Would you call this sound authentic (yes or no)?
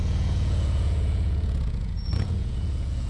no